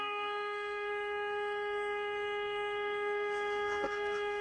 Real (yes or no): no